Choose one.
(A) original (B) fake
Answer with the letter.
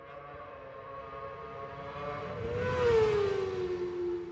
A